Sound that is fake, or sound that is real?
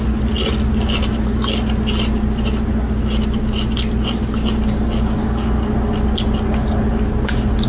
real